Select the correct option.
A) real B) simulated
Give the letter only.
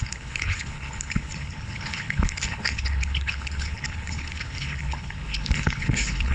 B